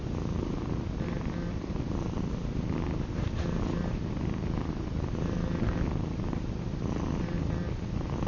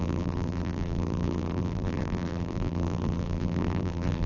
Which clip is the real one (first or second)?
first